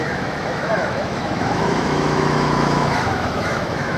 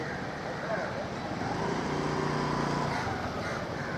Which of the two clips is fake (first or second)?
first